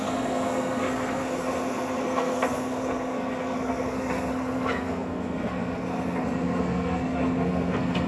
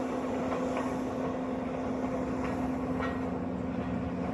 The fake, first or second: first